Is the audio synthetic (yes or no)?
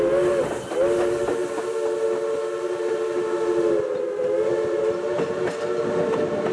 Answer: no